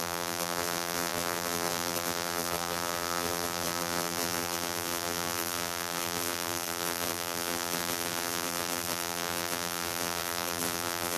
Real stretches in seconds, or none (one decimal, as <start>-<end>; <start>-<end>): none